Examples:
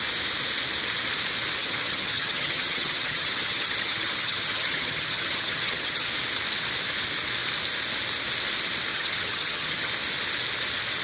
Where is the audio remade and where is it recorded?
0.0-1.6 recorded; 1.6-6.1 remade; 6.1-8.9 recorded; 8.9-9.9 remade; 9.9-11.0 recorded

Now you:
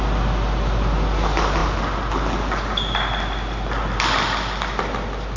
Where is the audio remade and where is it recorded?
0.0-5.4 recorded